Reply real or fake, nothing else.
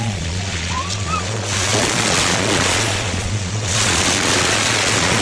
fake